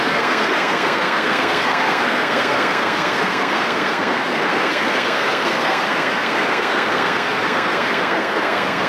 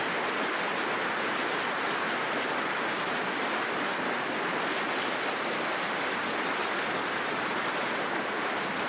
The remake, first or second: first